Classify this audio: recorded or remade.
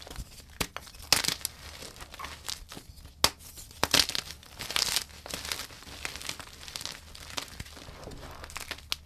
recorded